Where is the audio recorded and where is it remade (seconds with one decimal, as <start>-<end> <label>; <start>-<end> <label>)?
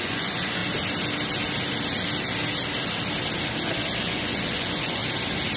0.0-0.6 remade; 0.6-4.0 recorded; 4.0-5.0 remade; 5.0-5.6 recorded